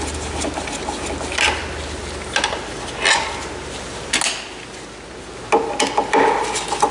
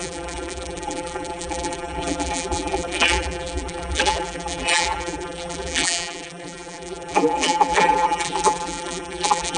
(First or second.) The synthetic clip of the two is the second